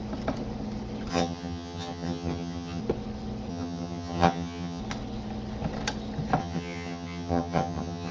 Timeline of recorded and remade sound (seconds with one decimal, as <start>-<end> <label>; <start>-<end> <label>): 0.0-1.1 recorded; 1.1-2.8 remade; 2.8-3.5 recorded; 3.5-4.8 remade; 4.8-6.4 recorded; 6.4-8.1 remade